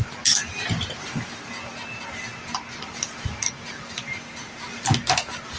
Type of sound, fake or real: real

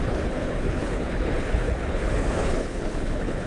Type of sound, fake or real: fake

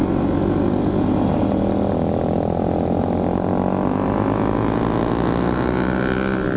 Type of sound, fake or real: real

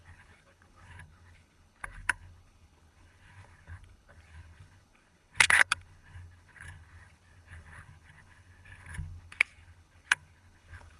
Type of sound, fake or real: fake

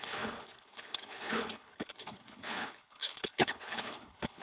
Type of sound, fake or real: fake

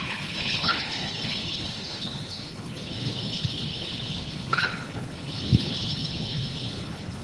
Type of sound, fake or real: fake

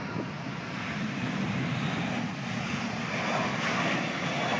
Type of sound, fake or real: real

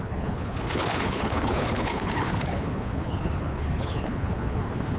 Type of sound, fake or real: fake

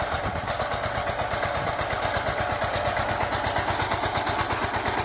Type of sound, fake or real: real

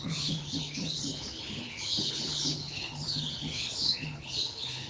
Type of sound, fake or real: fake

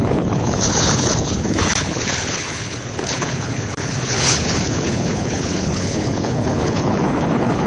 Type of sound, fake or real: fake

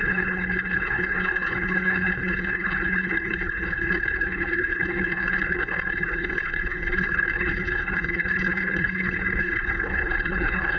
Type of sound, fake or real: fake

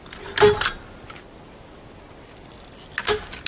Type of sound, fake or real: real